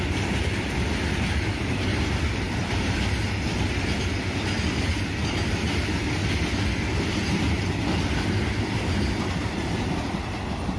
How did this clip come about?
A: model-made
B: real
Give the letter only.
B